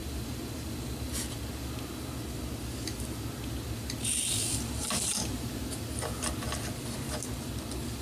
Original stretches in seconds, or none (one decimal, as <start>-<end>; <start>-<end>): 0.0-4.8; 5.6-8.0